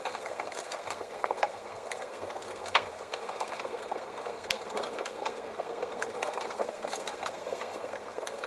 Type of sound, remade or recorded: remade